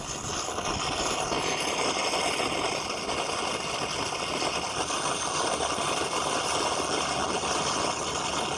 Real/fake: real